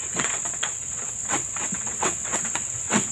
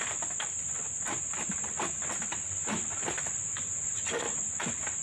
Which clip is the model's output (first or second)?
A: first